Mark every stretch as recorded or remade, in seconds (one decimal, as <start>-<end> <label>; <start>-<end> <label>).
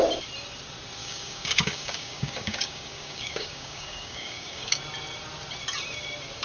0.0-1.0 recorded; 1.0-4.8 remade; 4.8-6.4 recorded